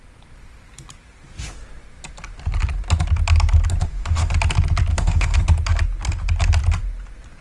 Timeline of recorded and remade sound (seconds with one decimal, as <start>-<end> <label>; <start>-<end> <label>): 0.0-3.8 recorded; 3.8-4.3 remade; 4.3-4.9 recorded; 4.9-5.4 remade; 5.4-7.4 recorded